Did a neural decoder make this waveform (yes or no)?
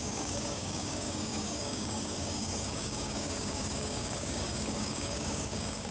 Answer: yes